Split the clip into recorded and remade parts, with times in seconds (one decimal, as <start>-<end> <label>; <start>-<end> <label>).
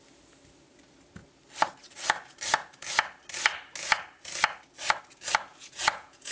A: 0.0-5.5 recorded; 5.5-6.3 remade